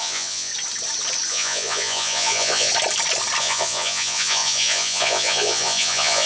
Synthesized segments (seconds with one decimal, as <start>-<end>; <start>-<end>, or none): 0.0-0.5; 1.3-2.7; 3.4-6.3